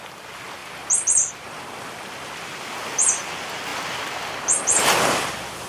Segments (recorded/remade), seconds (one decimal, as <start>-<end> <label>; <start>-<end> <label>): 0.0-5.7 recorded